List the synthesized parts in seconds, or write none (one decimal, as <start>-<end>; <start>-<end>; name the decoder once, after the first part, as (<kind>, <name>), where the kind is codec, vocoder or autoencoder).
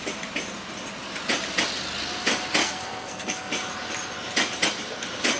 2.6-3.5 (codec, SNAC)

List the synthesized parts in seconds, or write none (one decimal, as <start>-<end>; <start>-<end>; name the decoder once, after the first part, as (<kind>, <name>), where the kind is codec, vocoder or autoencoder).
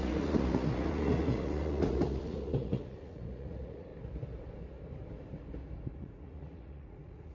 0.0-3.9 (vocoder, Vocos); 6.0-7.3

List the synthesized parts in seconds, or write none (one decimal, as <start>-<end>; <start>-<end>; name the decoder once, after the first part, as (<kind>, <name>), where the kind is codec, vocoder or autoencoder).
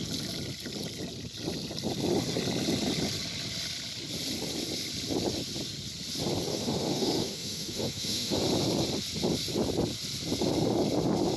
6.5-8.4 (autoencoder, DAC-VAE)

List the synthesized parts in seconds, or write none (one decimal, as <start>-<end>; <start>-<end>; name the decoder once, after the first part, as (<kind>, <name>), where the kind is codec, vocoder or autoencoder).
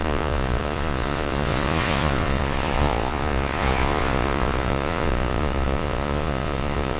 0.0-7.0 (vocoder, Vocos)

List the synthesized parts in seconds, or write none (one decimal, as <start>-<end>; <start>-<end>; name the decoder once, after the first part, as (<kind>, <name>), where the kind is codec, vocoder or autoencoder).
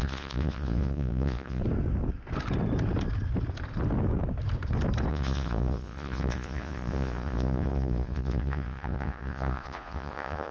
0.0-1.6 (vocoder, Vocos); 5.1-10.5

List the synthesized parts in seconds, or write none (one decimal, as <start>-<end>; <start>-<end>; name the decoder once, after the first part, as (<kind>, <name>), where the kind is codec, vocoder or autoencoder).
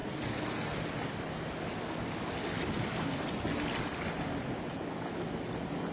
none